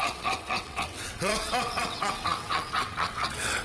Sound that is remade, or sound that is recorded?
remade